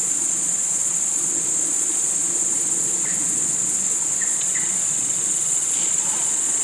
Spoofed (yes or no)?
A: yes